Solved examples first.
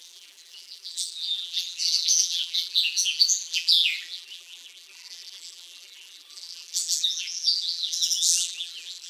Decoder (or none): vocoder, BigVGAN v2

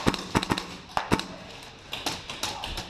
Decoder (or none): none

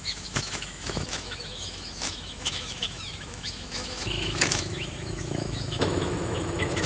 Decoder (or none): autoencoder, DAC-VAE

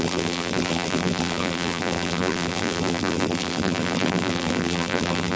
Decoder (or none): vocoder, BigVGAN v2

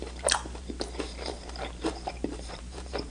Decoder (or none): vocoder, BigVGAN v2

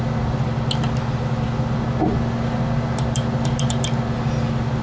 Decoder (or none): none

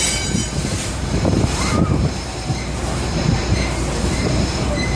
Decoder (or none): vocoder, BigVGAN v2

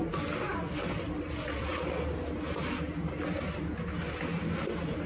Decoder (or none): none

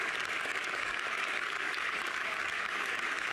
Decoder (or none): codec, DAC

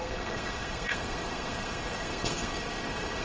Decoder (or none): codec, SNAC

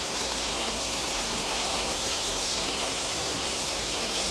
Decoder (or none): codec, SNAC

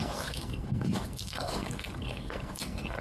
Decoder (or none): codec, SNAC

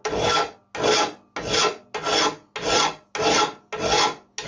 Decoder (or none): none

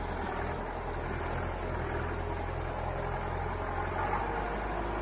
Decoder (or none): none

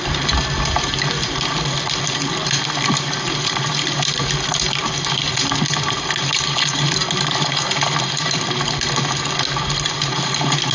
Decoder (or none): none